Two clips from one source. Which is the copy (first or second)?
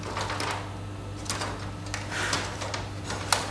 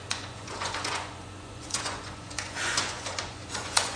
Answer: second